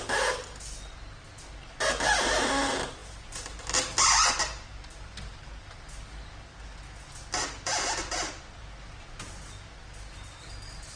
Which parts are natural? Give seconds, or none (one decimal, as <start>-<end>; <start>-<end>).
0.0-11.0